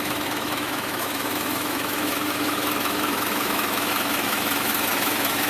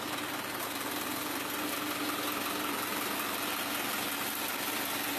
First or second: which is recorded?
second